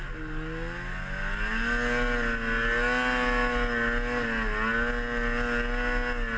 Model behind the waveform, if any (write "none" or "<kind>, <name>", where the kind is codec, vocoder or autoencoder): none